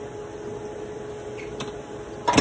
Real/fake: real